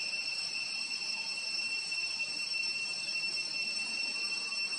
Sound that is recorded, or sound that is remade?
recorded